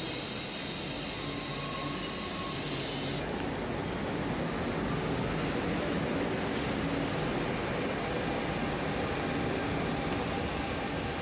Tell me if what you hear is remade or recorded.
recorded